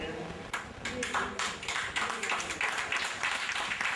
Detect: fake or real real